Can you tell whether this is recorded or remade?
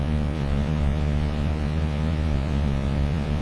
remade